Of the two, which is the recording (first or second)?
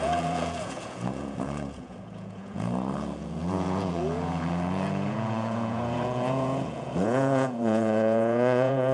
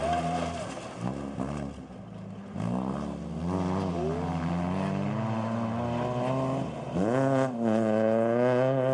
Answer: second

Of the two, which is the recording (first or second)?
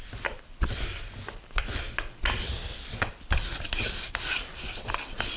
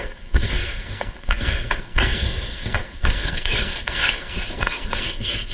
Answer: first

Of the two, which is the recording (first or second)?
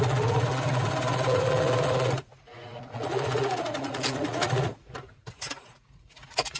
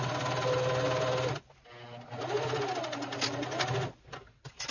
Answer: second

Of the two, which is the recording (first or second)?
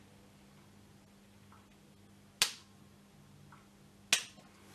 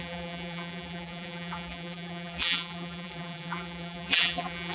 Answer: first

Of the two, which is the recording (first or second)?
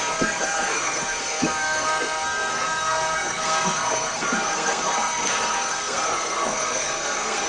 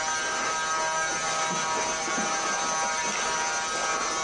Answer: second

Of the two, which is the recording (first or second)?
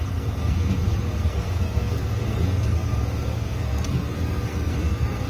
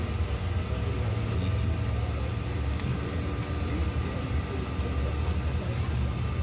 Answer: second